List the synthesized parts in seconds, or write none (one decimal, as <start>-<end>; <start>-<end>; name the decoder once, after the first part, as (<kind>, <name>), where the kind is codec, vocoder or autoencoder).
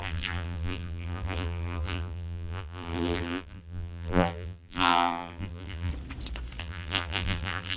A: 0.0-5.9 (vocoder, BigVGAN v2); 6.6-7.8